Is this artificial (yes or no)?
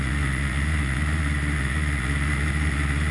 yes